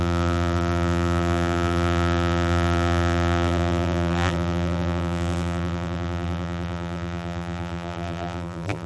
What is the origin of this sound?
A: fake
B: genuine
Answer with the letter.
A